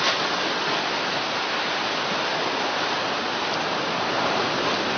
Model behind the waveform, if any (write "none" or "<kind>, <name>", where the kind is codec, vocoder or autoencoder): none